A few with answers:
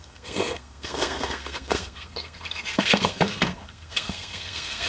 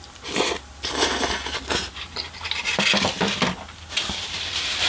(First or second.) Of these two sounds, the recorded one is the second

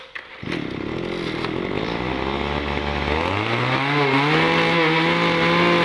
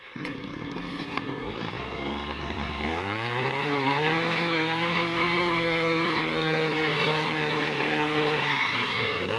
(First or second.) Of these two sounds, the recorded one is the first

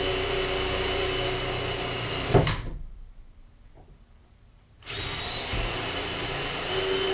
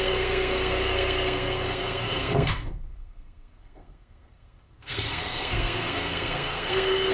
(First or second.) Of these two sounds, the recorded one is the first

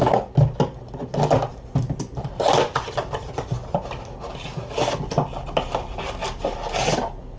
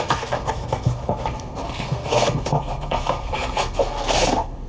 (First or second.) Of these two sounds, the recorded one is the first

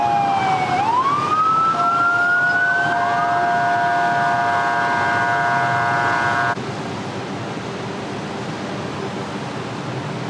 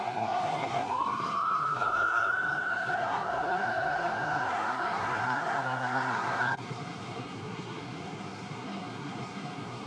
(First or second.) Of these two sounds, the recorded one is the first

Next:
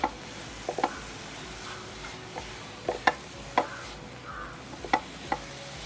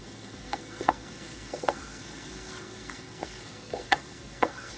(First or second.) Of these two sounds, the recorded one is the first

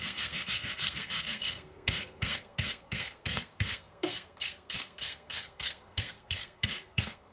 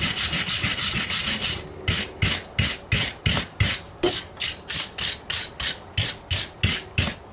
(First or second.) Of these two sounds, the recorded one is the second